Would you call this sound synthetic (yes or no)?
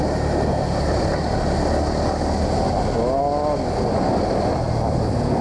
no